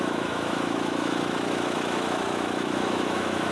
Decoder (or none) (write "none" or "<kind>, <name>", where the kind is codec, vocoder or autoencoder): autoencoder, DAC-VAE